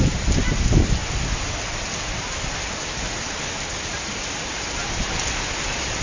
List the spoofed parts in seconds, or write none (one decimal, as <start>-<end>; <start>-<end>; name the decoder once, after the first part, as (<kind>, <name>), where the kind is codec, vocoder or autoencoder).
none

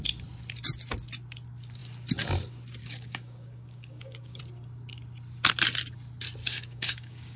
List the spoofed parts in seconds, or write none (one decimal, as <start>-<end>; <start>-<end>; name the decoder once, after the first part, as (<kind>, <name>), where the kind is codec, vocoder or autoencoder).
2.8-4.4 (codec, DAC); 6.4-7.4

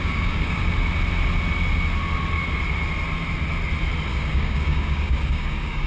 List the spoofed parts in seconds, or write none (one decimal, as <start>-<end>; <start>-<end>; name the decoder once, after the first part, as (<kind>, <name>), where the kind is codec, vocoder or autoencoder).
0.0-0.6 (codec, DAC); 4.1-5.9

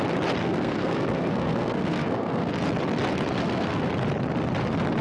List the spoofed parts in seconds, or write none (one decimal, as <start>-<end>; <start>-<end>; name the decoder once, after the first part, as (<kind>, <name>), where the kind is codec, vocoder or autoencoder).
0.4-2.5 (codec, SNAC); 3.4-3.9

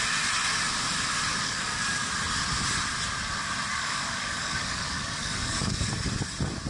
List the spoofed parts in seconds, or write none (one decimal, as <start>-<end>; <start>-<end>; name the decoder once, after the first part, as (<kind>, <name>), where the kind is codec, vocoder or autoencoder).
1.3-2.1 (codec, DAC); 3.7-6.1